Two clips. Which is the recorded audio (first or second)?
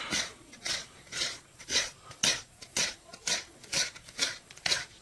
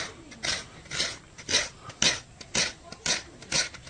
second